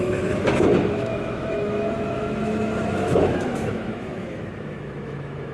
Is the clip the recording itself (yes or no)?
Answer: no